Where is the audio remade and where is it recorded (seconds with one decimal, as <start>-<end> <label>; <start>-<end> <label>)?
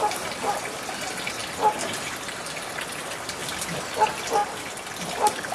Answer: 0.0-3.4 remade; 3.4-4.0 recorded; 4.0-4.4 remade; 4.4-5.0 recorded; 5.0-5.5 remade